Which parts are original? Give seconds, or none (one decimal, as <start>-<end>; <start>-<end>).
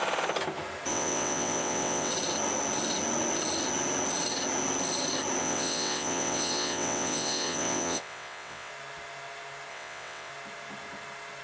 0.0-0.9; 2.1-5.4; 8.7-9.7; 10.3-11.4